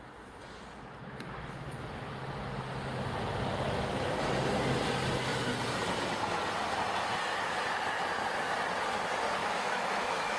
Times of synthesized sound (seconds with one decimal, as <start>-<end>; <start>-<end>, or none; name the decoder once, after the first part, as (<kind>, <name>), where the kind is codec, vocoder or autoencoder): 9.4-10.4 (autoencoder, DAC-VAE)